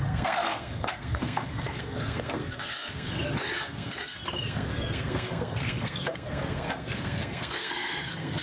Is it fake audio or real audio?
fake